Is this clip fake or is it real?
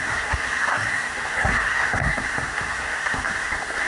fake